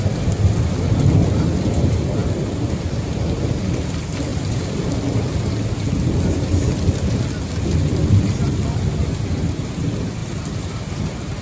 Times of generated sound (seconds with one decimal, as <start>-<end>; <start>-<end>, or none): 10.2-11.0